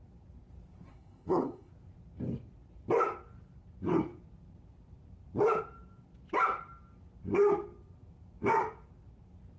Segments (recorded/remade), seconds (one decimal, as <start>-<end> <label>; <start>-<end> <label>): 0.0-0.9 recorded; 0.9-1.7 remade; 1.7-9.6 recorded